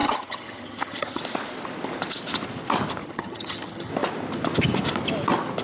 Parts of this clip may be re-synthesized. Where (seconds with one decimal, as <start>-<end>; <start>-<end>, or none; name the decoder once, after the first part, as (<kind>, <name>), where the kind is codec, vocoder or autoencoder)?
0.0-1.2 (vocoder, HiFi-GAN); 3.0-3.9